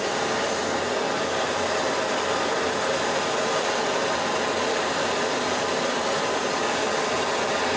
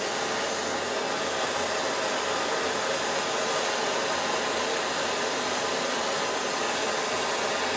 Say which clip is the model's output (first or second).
first